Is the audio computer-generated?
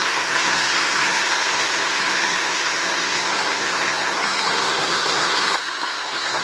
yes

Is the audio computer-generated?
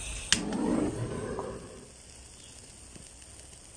no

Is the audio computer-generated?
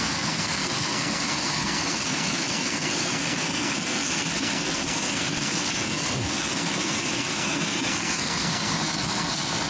yes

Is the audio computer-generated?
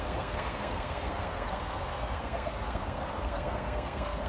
yes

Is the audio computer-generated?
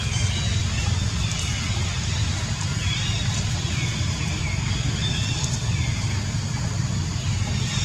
no